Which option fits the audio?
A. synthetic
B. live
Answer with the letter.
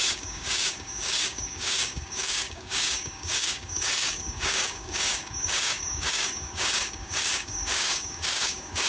A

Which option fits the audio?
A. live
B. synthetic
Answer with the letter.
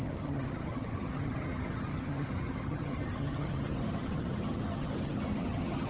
B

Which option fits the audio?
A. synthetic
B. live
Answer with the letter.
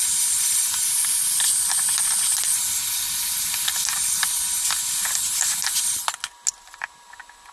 B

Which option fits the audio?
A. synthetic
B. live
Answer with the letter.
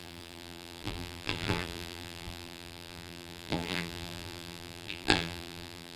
A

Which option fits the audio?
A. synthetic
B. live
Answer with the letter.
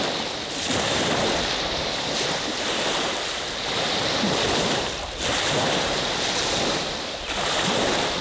A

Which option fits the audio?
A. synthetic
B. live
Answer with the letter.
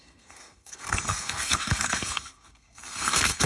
A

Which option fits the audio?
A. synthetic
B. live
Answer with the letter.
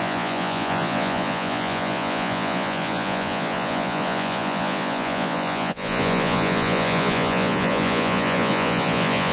A